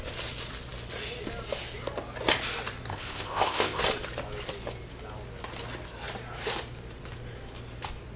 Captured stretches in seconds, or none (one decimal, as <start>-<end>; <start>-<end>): 0.0-2.9; 3.8-8.2